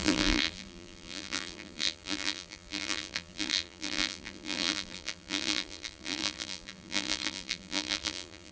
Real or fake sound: fake